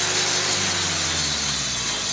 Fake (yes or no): no